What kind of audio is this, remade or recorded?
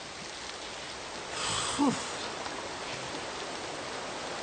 recorded